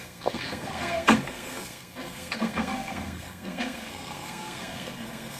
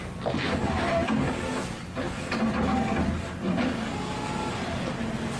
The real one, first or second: second